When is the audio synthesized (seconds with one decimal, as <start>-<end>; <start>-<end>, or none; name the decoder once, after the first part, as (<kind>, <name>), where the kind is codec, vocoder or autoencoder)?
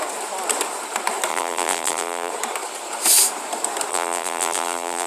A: 1.3-2.3 (vocoder, BigVGAN v2); 3.9-5.1